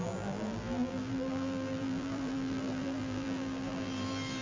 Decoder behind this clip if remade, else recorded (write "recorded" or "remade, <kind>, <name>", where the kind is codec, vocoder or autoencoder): remade, vocoder, BigVGAN v2